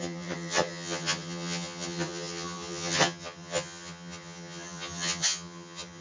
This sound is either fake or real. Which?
fake